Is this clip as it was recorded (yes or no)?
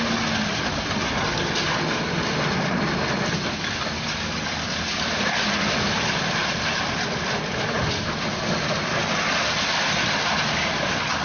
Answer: yes